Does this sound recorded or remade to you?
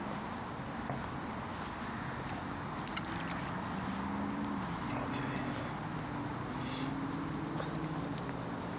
recorded